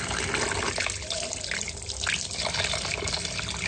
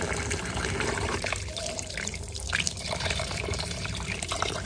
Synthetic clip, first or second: second